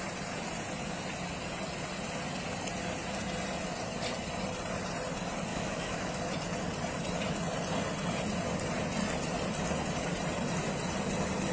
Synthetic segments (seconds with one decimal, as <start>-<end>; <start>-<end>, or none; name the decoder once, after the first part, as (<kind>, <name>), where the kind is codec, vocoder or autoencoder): 5.5-6.2 (autoencoder, DAC-VAE)